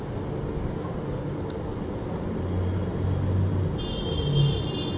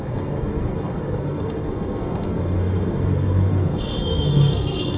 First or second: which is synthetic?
second